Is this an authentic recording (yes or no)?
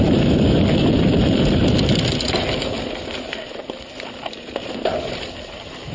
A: yes